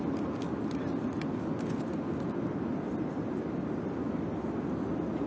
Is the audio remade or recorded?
recorded